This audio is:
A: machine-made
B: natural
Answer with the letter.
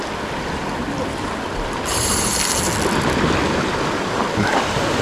B